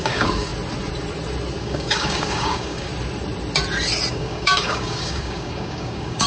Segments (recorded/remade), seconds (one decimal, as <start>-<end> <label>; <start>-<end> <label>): 0.0-0.5 remade; 0.5-1.6 recorded; 1.6-2.9 remade; 2.9-4.1 recorded; 4.1-6.3 remade